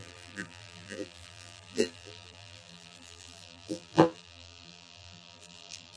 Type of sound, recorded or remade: remade